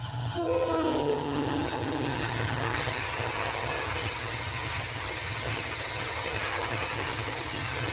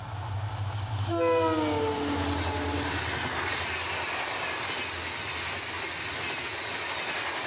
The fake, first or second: first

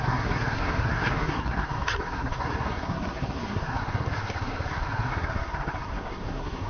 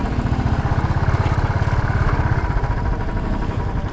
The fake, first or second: first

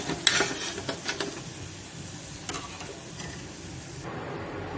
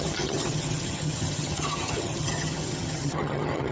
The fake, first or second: second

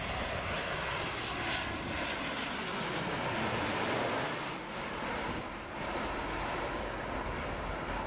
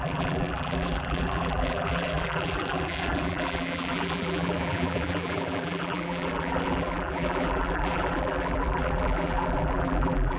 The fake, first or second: second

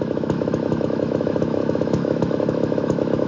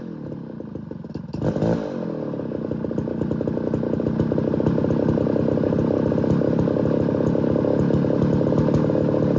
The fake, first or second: first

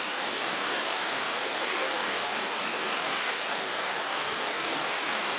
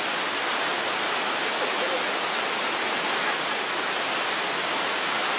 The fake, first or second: first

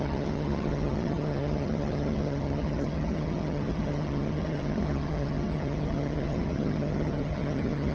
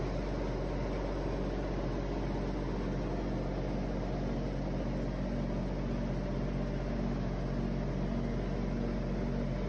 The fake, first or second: first